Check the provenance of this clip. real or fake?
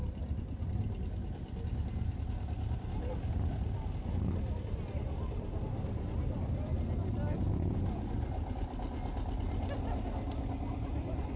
real